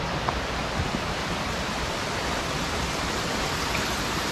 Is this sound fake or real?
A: real